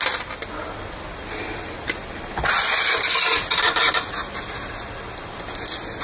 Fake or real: real